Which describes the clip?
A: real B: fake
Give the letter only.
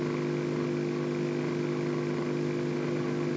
A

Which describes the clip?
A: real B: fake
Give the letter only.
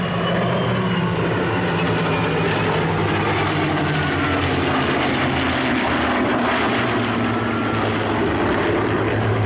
A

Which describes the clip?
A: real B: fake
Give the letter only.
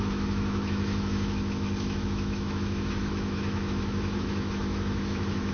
B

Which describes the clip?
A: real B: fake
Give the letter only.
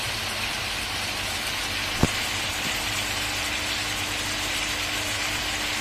A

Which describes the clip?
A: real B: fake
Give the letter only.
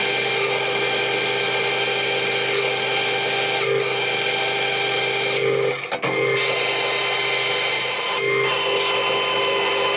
A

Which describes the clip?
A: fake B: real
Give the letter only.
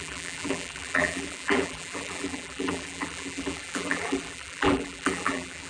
A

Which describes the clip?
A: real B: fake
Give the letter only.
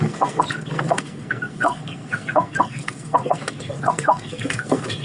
B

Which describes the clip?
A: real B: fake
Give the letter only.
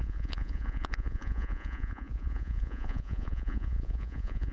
B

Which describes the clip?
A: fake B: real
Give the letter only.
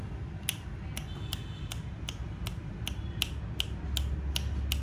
B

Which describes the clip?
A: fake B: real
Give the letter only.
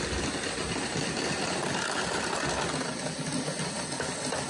B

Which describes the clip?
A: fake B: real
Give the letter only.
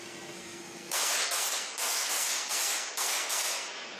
A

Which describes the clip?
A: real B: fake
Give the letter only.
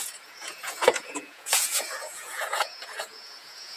B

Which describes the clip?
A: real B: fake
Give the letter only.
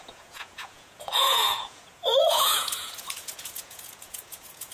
B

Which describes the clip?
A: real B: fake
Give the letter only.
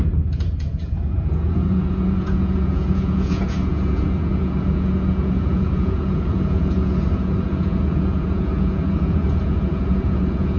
B